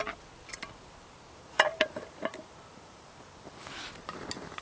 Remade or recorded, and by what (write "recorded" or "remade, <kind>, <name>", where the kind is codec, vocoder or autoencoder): recorded